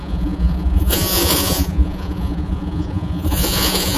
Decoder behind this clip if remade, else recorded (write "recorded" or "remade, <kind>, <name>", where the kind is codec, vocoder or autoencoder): remade, vocoder, Vocos